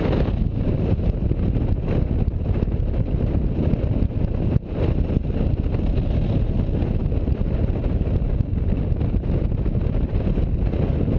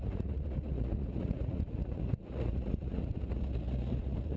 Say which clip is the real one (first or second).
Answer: first